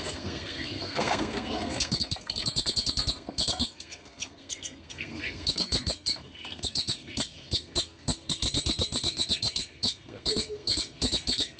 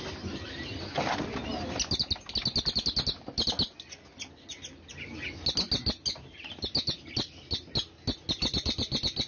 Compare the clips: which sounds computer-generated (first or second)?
first